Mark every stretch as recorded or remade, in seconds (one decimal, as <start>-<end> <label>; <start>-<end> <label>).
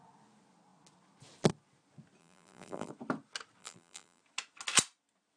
0.0-2.2 recorded; 2.2-2.9 remade; 2.9-3.6 recorded; 3.6-4.2 remade; 4.2-5.4 recorded